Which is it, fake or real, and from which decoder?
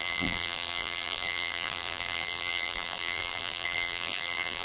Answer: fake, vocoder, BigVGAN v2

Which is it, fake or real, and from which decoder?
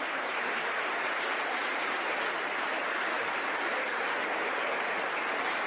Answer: fake, vocoder, BigVGAN v2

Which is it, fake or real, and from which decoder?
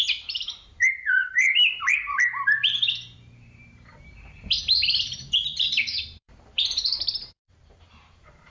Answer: fake, vocoder, BigVGAN v2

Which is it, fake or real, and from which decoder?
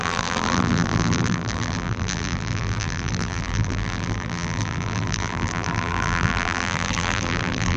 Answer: fake, vocoder, BigVGAN v2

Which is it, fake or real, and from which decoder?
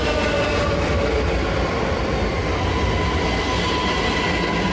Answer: real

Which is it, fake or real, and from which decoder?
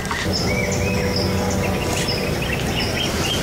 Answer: real